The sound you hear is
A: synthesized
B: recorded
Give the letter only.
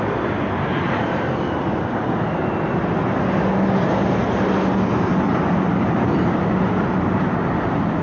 B